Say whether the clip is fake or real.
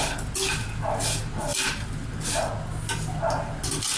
real